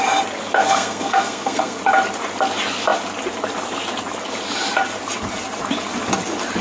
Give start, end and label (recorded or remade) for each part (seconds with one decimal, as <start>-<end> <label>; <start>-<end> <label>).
0.0-0.6 recorded; 0.6-1.8 remade; 1.8-6.6 recorded